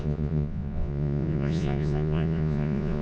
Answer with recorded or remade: remade